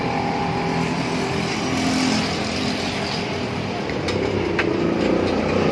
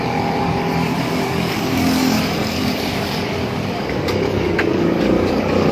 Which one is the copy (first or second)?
second